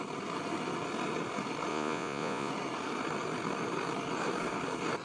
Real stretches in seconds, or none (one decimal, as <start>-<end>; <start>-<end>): 0.0-1.7; 2.5-5.0